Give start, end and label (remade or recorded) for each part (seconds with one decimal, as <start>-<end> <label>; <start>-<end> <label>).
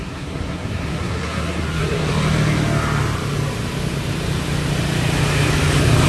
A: 0.0-2.1 remade; 2.1-6.1 recorded